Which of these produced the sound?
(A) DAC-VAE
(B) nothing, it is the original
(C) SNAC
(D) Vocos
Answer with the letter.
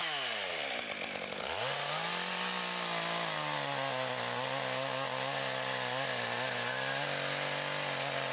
B